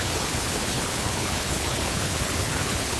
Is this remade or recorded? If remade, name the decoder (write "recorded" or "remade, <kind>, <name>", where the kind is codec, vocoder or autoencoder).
remade, codec, HILCodec